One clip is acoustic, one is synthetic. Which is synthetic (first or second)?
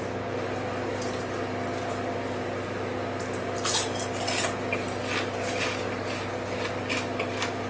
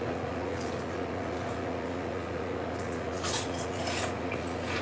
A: second